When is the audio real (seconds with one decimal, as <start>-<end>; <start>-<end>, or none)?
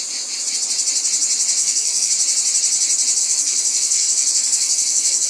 0.0-1.6; 2.1-3.2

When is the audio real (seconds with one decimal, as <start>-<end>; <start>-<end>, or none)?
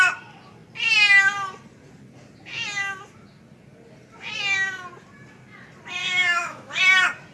0.0-6.0; 6.8-7.3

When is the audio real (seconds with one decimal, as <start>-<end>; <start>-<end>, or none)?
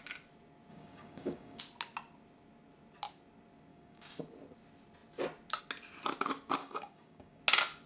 0.0-0.7; 1.6-3.7; 4.2-6.6; 7.4-7.9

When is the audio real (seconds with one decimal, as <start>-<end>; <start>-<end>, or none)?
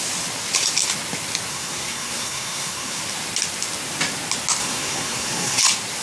0.0-1.5; 3.0-4.6; 5.6-6.0